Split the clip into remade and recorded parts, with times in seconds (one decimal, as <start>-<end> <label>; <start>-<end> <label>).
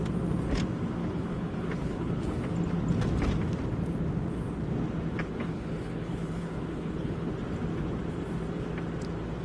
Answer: 0.0-1.0 recorded; 1.0-2.4 remade; 2.4-5.2 recorded; 5.2-7.3 remade; 7.3-9.4 recorded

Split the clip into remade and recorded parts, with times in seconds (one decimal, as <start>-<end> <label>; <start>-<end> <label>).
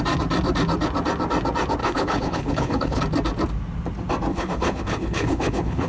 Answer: 0.0-1.8 recorded; 1.8-3.0 remade; 3.0-4.3 recorded; 4.3-5.9 remade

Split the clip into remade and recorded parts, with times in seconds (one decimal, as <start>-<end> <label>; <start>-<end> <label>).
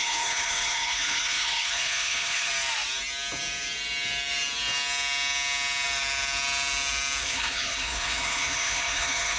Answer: 0.0-2.5 remade; 2.5-7.2 recorded; 7.2-9.4 remade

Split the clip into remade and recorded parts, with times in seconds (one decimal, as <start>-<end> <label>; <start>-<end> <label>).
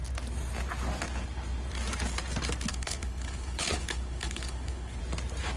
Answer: 0.0-2.7 recorded; 2.7-5.0 remade; 5.0-5.6 recorded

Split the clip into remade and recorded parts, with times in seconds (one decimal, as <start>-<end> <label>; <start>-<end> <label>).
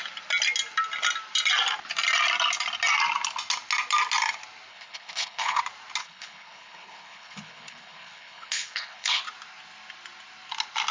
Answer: 0.0-4.7 recorded; 4.7-5.6 remade; 5.6-6.0 recorded; 6.0-9.2 remade; 9.2-10.9 recorded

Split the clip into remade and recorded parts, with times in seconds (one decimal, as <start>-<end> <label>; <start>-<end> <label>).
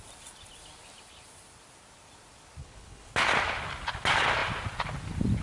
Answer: 0.0-2.6 recorded; 2.6-3.1 remade; 3.1-5.4 recorded